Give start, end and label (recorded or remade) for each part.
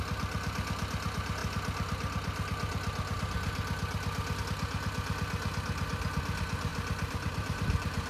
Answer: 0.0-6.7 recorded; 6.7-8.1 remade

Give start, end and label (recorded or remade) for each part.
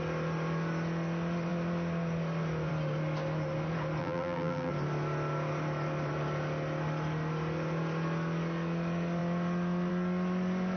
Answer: 0.0-4.0 recorded; 4.0-4.7 remade; 4.7-10.8 recorded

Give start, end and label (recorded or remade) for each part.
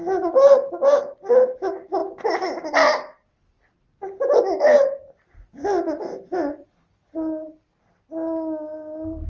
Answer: 0.0-9.3 recorded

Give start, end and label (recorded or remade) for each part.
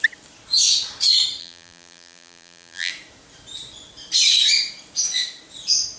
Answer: 0.0-1.4 recorded; 1.4-2.9 remade; 2.9-6.0 recorded